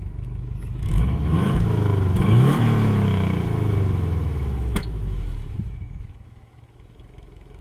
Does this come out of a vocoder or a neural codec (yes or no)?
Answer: yes